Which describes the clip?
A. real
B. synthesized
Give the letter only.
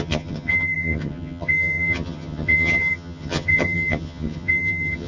B